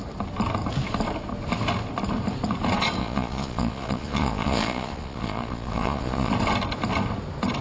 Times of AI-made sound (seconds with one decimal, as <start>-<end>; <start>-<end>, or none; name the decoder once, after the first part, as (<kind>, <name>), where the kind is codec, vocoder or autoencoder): 3.0-6.3 (vocoder, Vocos)

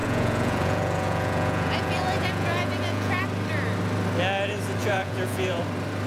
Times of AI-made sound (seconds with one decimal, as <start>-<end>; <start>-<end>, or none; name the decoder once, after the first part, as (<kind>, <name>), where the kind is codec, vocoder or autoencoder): 0.0-3.2 (vocoder, Vocos); 4.8-5.6

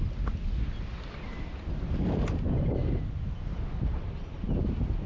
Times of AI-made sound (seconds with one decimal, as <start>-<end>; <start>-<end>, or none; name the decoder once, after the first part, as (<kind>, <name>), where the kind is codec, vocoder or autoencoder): none

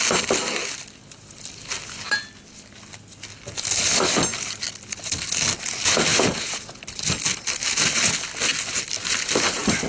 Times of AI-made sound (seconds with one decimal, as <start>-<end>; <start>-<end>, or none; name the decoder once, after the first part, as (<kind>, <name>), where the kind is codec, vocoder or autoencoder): 6.1-6.8 (vocoder, Vocos)

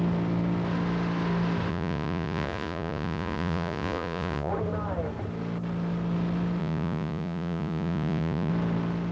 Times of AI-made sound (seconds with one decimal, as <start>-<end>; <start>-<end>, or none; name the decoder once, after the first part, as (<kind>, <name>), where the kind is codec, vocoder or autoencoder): 1.7-4.5 (vocoder, Vocos); 6.6-8.5

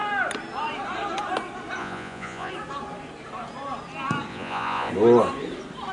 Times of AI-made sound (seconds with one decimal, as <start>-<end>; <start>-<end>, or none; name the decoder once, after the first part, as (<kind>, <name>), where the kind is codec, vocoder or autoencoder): 1.8-2.5 (vocoder, Vocos); 4.3-4.9

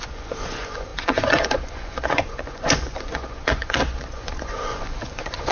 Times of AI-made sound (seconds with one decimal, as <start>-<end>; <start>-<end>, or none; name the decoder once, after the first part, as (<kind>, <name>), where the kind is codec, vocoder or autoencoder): 0.0-5.5 (vocoder, Vocos)

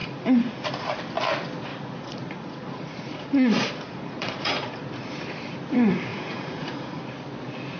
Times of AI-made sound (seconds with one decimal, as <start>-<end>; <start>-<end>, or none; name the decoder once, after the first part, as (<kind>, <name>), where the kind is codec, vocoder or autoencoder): 0.0-0.5 (vocoder, Vocos); 1.7-4.9; 6.1-7.1